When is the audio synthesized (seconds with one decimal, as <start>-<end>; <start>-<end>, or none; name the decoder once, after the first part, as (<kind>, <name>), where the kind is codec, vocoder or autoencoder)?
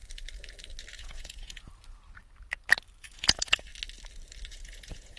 1.0-1.7 (vocoder, Vocos); 3.0-3.7; 4.5-5.2